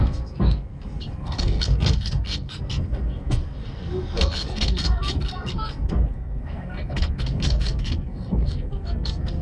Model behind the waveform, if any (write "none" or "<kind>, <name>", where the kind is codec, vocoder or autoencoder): codec, SNAC